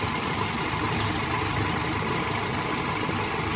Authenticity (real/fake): real